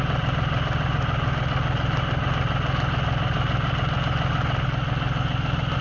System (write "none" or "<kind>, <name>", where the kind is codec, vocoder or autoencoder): none